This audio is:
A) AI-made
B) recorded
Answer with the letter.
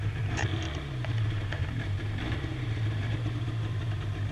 A